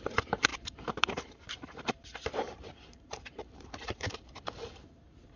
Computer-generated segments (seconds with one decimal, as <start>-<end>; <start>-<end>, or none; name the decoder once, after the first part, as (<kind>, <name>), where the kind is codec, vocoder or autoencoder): 0.0-5.4 (vocoder, BigVGAN v2)